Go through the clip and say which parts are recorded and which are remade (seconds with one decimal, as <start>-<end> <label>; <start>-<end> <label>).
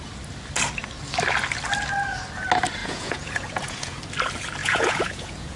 0.0-2.8 recorded; 2.8-4.0 remade; 4.0-4.6 recorded; 4.6-5.6 remade